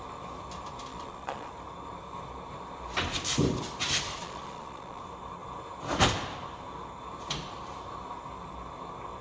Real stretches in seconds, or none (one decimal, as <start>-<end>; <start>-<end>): 0.0-0.9; 1.5-4.2; 5.0-9.2